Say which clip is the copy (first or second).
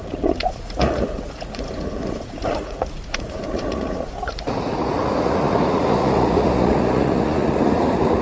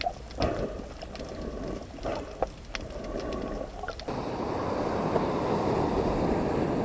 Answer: first